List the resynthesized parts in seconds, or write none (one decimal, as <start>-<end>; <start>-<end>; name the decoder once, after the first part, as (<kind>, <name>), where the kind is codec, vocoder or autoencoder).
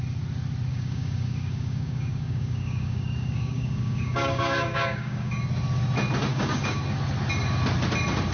0.7-5.4 (codec, DAC); 6.3-6.8